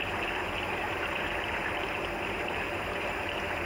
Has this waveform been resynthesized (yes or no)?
yes